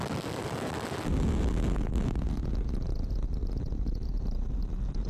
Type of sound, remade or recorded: recorded